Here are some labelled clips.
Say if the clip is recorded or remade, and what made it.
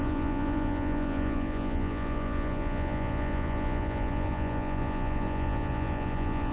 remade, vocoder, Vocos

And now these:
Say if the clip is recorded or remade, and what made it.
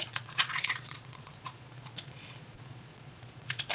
remade, vocoder, Vocos